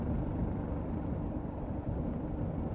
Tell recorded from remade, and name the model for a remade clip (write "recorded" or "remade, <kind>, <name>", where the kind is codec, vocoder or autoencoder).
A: recorded